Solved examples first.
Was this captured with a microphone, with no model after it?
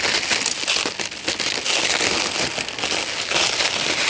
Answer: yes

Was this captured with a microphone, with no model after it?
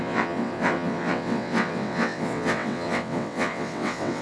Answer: no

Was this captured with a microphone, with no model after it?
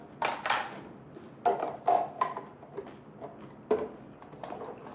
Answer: yes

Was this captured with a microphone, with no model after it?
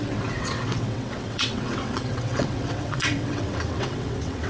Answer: no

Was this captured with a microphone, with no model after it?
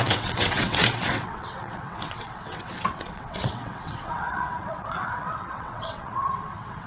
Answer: no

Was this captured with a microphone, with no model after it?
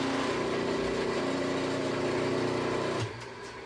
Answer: yes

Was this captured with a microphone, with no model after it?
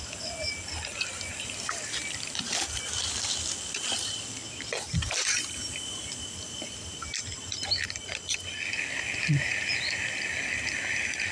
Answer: yes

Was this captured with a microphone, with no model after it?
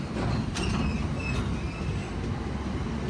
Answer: yes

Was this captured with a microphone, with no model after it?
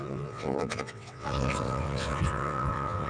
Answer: no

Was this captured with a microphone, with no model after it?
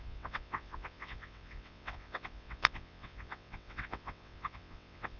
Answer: no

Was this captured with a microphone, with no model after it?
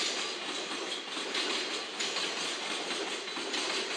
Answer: yes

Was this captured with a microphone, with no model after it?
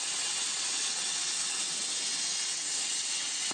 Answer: no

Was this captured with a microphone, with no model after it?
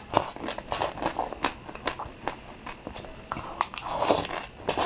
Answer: yes